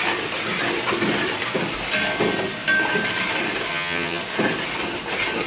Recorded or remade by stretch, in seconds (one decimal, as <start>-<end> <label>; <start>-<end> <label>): 0.0-3.7 recorded; 3.7-4.2 remade; 4.2-5.5 recorded